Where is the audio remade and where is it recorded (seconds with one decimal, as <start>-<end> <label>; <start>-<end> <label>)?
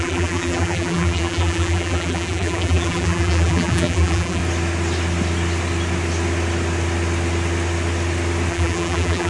0.0-4.4 remade; 4.4-8.5 recorded; 8.5-9.3 remade